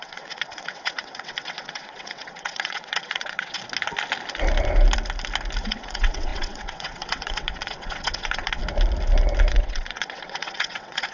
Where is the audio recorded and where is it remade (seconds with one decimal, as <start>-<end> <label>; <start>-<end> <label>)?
0.0-3.6 remade; 3.6-5.6 recorded; 5.6-8.6 remade; 8.6-9.5 recorded; 9.5-11.1 remade